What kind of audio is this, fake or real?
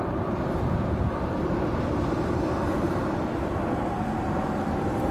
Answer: fake